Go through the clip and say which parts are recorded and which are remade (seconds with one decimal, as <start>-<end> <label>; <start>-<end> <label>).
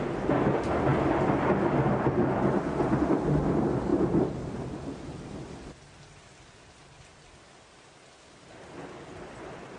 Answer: 0.0-9.8 recorded